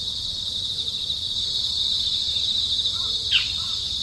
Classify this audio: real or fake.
fake